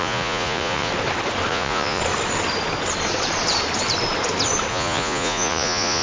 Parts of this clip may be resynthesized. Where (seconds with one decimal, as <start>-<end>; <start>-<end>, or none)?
0.0-0.9; 1.5-2.0; 4.7-6.0